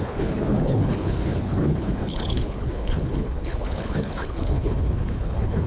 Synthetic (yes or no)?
yes